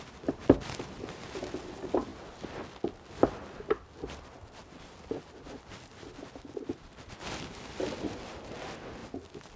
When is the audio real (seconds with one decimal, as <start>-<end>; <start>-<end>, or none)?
2.1-5.6; 9.0-9.6